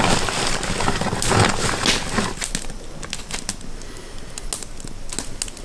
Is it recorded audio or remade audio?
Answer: recorded